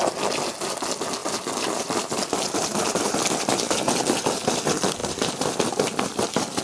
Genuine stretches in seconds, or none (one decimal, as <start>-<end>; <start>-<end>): 0.0-1.2; 3.9-5.0